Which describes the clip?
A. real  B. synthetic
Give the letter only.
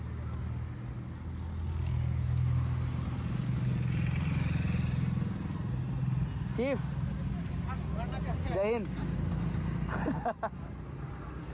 A